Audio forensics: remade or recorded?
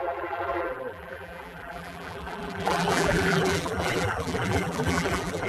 remade